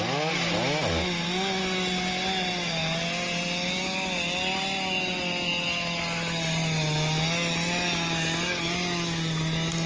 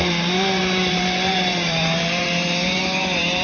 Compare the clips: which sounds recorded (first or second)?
first